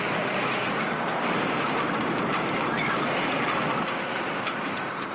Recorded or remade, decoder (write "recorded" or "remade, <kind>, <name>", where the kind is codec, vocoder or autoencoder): remade, vocoder, BigVGAN v2